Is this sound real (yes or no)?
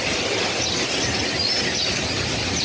yes